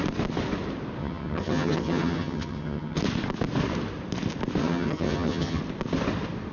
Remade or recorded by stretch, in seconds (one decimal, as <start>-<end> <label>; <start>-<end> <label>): 0.0-1.0 recorded; 1.0-3.0 remade; 3.0-4.6 recorded; 4.6-5.6 remade; 5.6-6.5 recorded